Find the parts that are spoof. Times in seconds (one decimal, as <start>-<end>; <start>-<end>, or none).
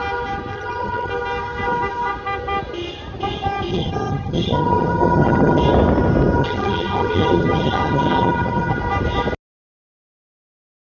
0.5-1.1; 3.7-5.6; 6.4-8.8